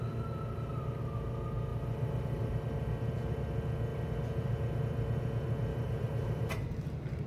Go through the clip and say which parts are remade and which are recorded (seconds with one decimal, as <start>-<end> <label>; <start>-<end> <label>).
0.0-1.7 recorded; 1.7-2.5 remade; 2.5-5.7 recorded; 5.7-7.3 remade